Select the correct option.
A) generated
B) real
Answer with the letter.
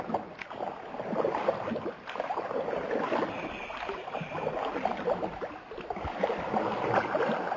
B